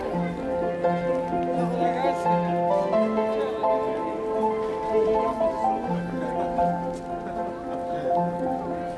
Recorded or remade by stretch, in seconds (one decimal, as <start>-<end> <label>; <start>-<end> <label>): 0.0-9.0 recorded